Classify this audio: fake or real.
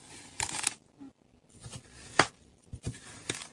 real